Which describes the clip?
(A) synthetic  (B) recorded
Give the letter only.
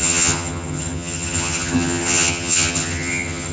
A